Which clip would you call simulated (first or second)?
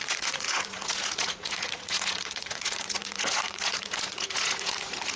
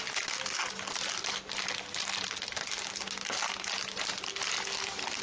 first